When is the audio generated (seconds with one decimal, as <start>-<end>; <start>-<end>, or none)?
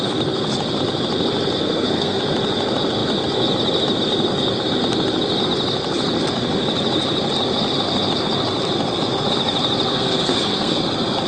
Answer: 1.6-2.2; 9.9-10.8